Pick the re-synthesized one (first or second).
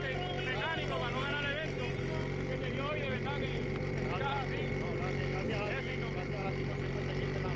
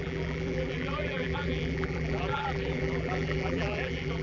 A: second